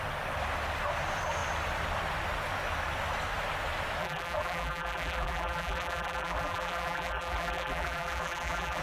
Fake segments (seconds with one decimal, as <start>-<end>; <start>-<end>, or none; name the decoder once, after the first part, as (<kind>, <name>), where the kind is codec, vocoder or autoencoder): 4.0-8.8 (vocoder, BigVGAN v2)